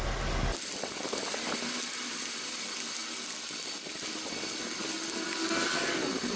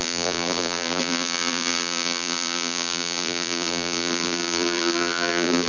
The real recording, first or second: first